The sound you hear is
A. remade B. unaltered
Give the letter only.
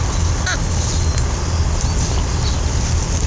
B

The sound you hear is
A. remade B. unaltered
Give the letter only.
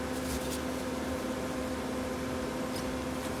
B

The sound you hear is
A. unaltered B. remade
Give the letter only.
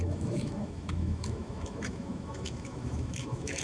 B